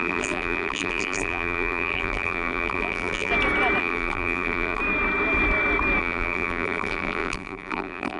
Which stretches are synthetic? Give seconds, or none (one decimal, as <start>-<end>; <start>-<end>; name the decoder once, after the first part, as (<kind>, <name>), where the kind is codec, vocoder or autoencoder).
0.0-3.3 (vocoder, BigVGAN v2); 3.8-4.8; 6.0-8.2